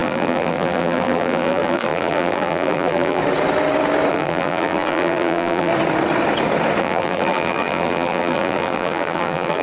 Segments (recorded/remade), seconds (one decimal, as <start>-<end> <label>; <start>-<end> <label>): 0.0-3.2 remade; 3.2-4.1 recorded; 4.1-5.7 remade; 5.7-6.8 recorded; 6.8-9.6 remade